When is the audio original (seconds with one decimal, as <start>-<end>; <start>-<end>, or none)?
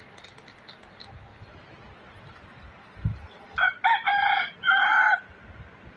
0.0-6.0